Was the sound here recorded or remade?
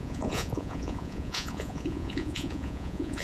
remade